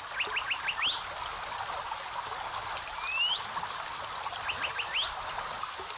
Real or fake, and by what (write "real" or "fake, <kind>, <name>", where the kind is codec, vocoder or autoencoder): real